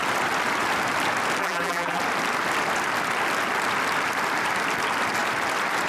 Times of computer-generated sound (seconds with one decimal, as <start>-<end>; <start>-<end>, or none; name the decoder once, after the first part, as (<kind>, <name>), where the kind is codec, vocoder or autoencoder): 1.4-2.0 (vocoder, BigVGAN v2)